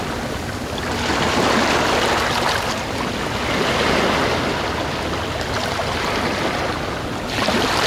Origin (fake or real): real